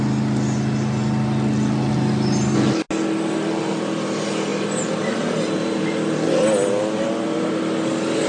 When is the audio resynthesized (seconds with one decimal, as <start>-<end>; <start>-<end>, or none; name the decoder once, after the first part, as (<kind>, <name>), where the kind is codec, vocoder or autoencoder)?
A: 4.5-6.7 (vocoder, BigVGAN v2)